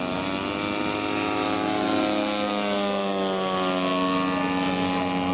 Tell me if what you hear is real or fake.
real